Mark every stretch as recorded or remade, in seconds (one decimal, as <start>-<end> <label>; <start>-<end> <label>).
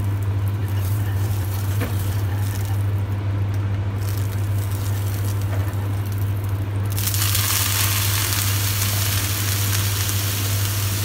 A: 0.0-0.6 recorded; 0.6-2.3 remade; 2.3-11.0 recorded